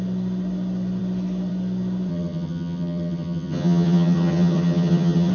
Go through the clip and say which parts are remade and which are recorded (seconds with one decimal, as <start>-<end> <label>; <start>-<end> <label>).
0.0-2.1 recorded; 2.1-5.3 remade